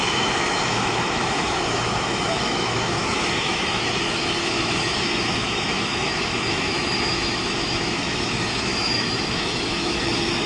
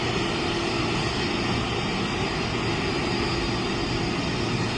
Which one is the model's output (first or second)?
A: first